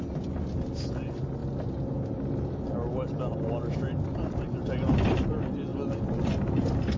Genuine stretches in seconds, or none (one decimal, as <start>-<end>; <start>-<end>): 0.0-7.0